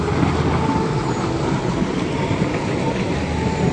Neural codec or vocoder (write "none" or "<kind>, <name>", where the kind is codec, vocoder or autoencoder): none